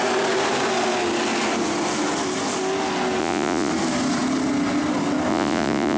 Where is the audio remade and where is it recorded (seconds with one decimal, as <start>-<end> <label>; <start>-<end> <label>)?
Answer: 0.0-3.2 recorded; 3.2-3.7 remade; 3.7-5.3 recorded; 5.3-6.0 remade